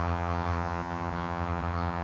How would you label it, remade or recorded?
remade